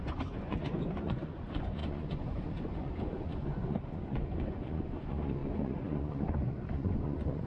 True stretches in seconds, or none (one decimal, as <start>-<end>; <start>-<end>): none